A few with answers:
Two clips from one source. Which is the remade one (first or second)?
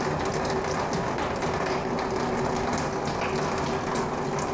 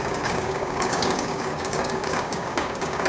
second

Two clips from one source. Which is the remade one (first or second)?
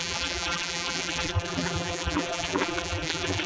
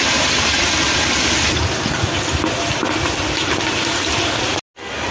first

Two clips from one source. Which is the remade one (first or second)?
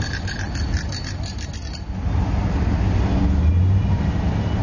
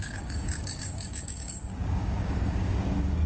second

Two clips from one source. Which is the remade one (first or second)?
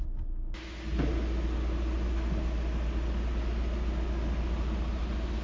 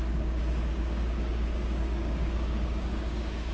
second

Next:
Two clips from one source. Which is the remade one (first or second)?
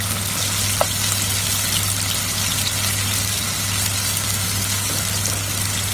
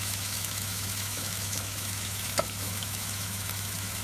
second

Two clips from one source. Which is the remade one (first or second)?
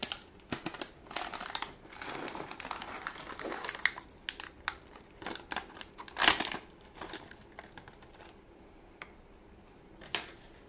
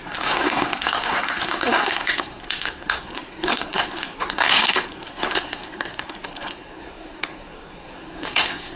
second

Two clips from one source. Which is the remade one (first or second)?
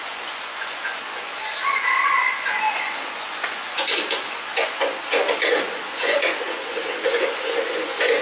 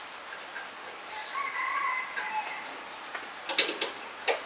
first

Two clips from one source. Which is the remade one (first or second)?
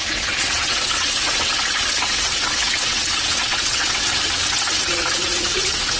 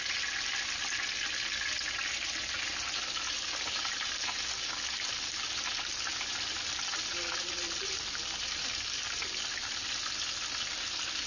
first